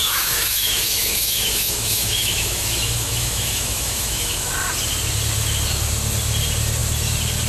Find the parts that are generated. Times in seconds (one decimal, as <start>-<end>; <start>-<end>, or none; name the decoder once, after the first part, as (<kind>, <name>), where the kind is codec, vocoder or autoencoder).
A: 0.0-4.5 (autoencoder, DAC-VAE)